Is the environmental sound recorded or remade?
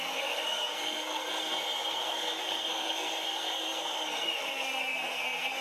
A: remade